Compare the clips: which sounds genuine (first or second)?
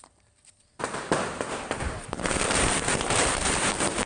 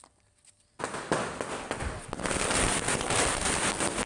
second